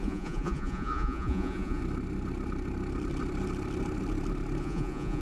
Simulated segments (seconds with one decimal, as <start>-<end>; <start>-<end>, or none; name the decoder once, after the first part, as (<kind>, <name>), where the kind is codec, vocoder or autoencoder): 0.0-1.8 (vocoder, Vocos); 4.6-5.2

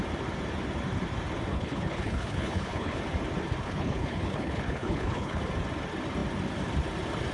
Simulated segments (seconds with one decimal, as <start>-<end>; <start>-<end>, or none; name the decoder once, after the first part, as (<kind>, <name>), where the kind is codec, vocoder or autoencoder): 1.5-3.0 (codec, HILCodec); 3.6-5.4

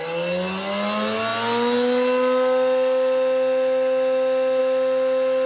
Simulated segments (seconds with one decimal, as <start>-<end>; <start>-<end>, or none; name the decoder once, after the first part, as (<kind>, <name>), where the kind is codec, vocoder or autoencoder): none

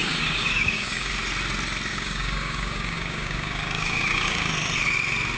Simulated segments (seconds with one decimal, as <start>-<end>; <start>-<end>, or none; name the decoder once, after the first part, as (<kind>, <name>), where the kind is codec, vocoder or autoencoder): 0.0-1.1 (codec, DAC); 1.9-4.5